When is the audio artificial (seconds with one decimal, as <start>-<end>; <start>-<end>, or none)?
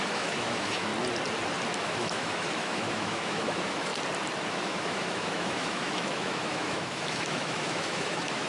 0.0-0.9; 1.8-3.9; 4.5-8.5